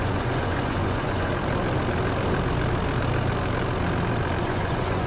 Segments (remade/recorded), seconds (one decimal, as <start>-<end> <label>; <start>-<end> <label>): 0.0-1.3 remade; 1.3-4.4 recorded; 4.4-5.1 remade

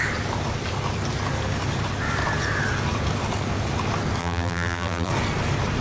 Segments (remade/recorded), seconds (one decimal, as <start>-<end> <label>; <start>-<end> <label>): 0.0-4.2 recorded; 4.2-5.1 remade; 5.1-5.8 recorded

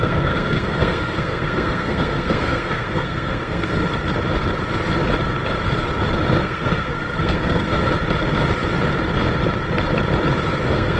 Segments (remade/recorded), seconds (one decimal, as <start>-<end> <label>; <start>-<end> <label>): 0.0-3.8 remade; 3.8-6.4 recorded; 6.4-7.8 remade; 7.8-10.6 recorded; 10.6-11.0 remade

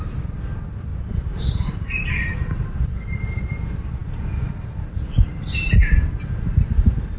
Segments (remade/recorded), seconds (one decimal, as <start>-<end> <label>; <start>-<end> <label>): 0.0-0.9 recorded; 0.9-2.1 remade; 2.1-7.2 recorded

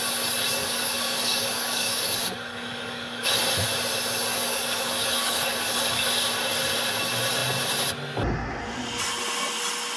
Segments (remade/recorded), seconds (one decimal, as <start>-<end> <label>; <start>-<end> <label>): 0.0-0.6 recorded; 0.6-3.4 remade; 3.4-4.3 recorded; 4.3-6.1 remade; 6.1-10.0 recorded

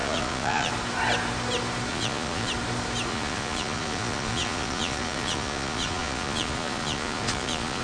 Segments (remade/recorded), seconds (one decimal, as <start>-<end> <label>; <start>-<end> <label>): 0.0-0.7 remade; 0.7-1.9 recorded; 1.9-2.5 remade; 2.5-3.1 recorded; 3.1-7.8 remade